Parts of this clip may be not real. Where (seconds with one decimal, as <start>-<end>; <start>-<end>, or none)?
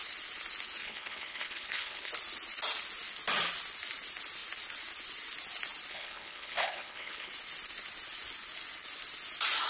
0.8-2.1; 5.9-7.3